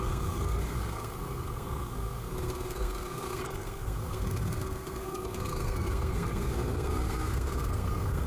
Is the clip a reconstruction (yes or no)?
yes